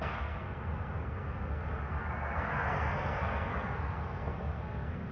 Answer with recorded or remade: remade